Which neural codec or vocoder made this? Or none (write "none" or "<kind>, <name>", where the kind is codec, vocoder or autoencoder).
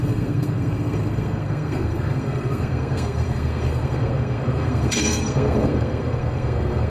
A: codec, SNAC